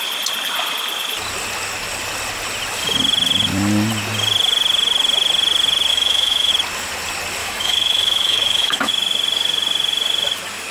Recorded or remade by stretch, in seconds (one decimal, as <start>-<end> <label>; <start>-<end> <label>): 0.0-5.9 recorded; 5.9-6.5 remade; 6.5-7.4 recorded; 7.4-8.9 remade; 8.9-10.7 recorded